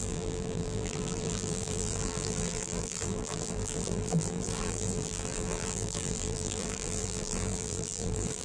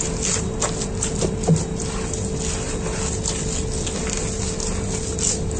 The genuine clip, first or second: second